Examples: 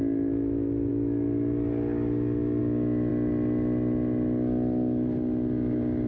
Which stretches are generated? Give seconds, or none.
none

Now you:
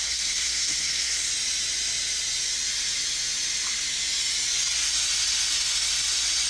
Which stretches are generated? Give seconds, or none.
0.0-1.3 (codec, SNAC)

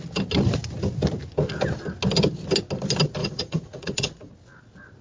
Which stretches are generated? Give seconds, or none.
3.2-4.3 (vocoder, Vocos)